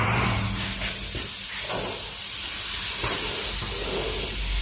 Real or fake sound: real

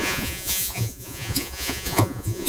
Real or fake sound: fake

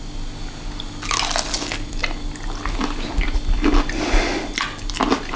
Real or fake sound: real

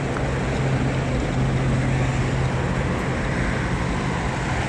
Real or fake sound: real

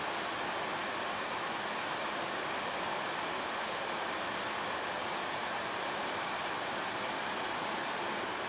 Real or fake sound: real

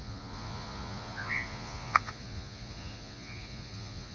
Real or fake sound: fake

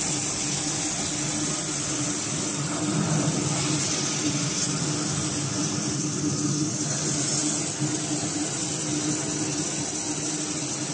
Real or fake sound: real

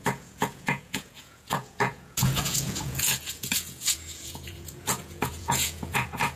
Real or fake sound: fake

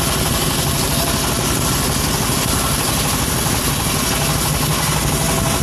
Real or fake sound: real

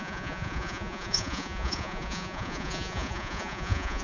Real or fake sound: fake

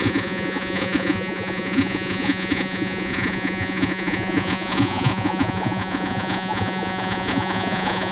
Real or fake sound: fake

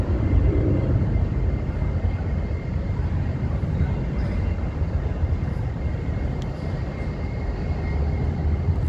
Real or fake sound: real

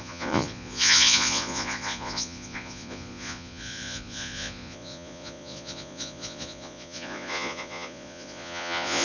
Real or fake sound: fake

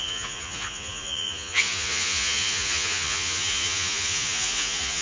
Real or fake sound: fake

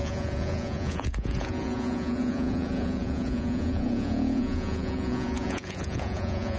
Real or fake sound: fake